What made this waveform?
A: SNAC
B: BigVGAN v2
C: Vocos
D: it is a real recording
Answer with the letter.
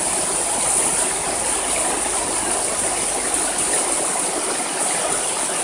D